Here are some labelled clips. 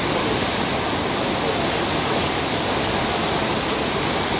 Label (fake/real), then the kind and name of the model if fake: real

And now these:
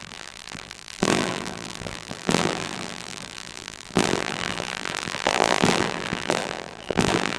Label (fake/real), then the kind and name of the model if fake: fake, vocoder, BigVGAN v2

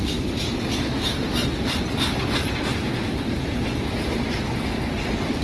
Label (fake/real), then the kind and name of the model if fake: real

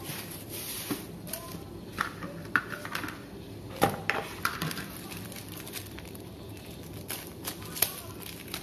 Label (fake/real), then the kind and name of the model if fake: fake, vocoder, BigVGAN v2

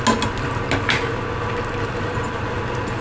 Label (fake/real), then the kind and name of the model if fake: real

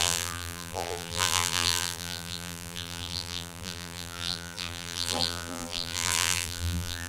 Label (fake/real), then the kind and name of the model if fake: fake, vocoder, BigVGAN v2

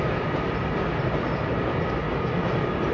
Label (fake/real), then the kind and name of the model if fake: real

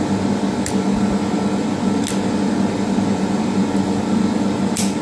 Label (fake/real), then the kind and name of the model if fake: real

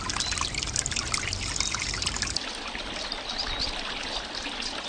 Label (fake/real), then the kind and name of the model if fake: real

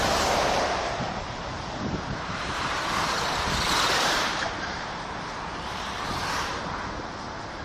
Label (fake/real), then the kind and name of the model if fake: fake, vocoder, BigVGAN v2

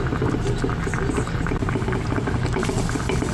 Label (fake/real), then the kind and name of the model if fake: real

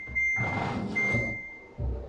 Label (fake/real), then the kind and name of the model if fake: fake, vocoder, BigVGAN v2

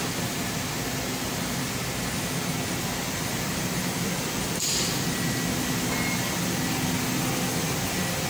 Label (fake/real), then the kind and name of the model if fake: real